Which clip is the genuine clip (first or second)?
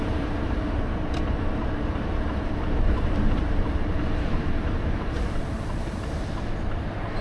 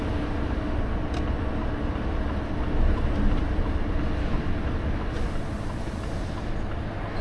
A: second